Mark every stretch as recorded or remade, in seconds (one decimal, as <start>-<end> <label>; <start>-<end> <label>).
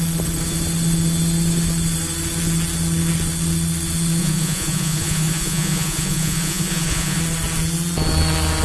0.0-4.2 recorded; 4.2-7.2 remade; 7.2-8.6 recorded